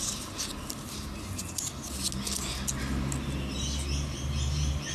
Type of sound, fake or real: real